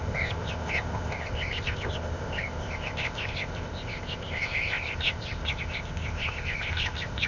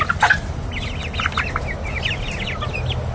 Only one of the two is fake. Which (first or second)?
first